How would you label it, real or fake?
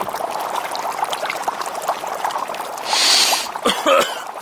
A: real